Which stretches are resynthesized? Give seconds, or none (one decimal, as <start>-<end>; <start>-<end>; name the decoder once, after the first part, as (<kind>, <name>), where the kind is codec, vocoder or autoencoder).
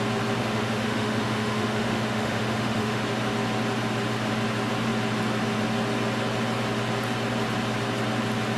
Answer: 0.4-3.0 (autoencoder, DAC-VAE)